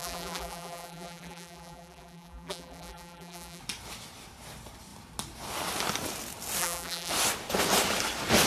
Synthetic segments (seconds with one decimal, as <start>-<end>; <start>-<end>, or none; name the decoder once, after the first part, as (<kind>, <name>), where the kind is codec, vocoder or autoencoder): 0.0-3.6 (vocoder, BigVGAN v2); 6.6-7.1